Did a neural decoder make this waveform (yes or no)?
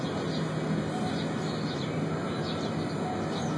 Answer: no